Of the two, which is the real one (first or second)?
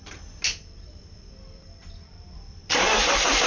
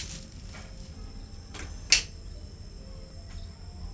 second